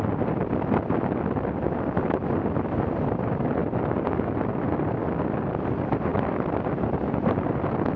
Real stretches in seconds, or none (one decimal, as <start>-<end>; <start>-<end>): 0.0-8.0